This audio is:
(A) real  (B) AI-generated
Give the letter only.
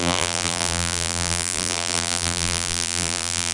B